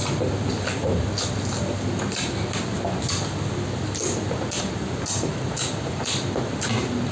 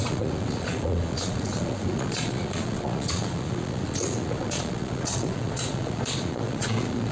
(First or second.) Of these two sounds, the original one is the first